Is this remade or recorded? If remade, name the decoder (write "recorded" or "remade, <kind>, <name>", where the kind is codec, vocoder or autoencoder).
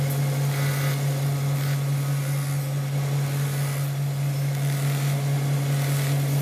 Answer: recorded